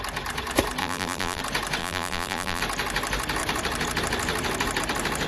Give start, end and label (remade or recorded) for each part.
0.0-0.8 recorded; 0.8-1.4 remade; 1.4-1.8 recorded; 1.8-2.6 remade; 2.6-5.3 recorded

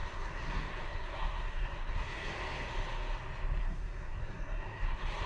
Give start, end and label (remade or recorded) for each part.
0.0-2.4 remade; 2.4-3.6 recorded; 3.6-5.3 remade